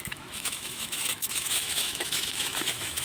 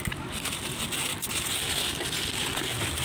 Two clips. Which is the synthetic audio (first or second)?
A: first